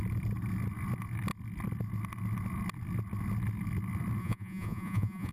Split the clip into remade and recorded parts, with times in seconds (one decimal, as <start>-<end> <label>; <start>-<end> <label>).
0.0-4.2 recorded; 4.2-5.3 remade